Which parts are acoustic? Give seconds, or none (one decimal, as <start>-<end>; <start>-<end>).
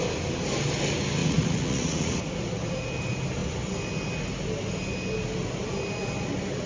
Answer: 0.0-1.2; 2.2-6.7